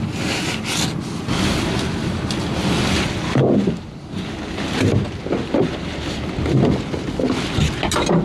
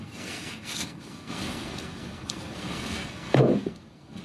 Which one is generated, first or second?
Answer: second